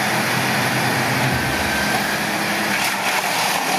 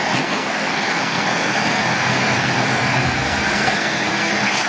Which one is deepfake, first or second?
second